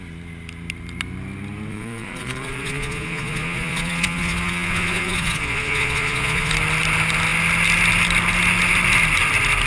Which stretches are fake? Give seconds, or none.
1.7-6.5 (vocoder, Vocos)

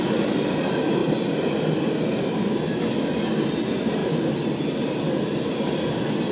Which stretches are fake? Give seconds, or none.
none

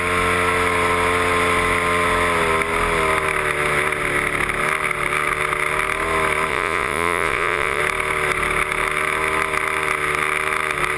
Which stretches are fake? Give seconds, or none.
6.5-7.8 (vocoder, Vocos)

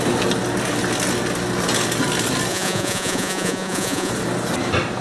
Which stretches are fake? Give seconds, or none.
2.5-4.1 (vocoder, Vocos)

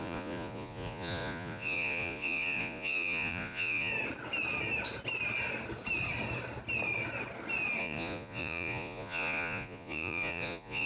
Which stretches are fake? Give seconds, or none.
0.0-3.9 (vocoder, Vocos); 7.8-10.9